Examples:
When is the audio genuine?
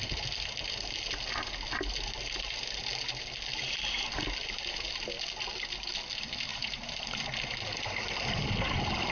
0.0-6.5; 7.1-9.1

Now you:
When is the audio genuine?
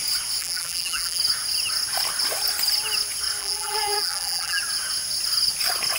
0.0-0.4; 1.2-3.4; 4.6-6.0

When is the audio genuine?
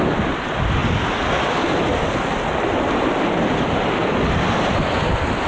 0.0-5.5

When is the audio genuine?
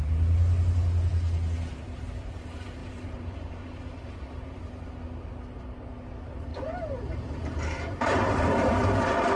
0.0-2.8; 4.9-6.5; 8.7-9.4